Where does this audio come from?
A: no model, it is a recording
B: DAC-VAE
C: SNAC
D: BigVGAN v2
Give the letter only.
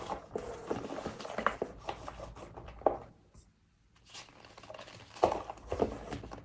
A